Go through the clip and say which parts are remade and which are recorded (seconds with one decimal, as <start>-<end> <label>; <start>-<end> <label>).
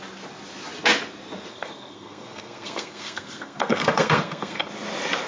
0.0-1.5 recorded; 1.5-4.7 remade; 4.7-5.3 recorded